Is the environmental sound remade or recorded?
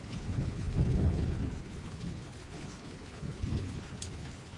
remade